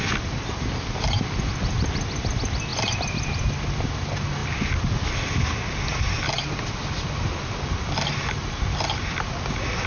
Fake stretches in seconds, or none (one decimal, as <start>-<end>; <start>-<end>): none